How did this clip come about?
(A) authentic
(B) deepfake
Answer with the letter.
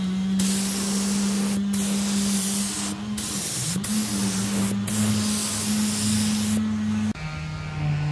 A